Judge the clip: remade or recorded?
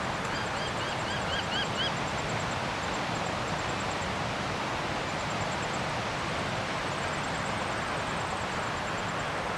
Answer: recorded